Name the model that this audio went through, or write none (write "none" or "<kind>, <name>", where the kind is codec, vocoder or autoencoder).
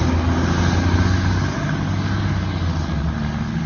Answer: none